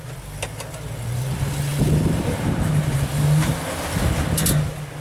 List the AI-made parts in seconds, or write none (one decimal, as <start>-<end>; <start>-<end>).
none

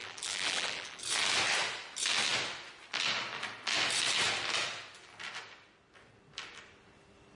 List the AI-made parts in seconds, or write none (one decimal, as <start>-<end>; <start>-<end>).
0.0-1.0